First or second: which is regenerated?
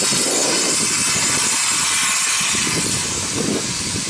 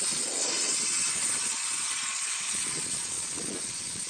second